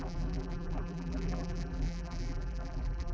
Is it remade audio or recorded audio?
remade